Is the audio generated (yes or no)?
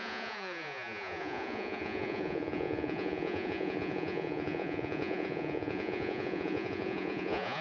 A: yes